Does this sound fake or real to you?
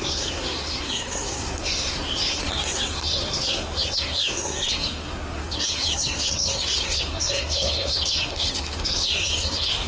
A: fake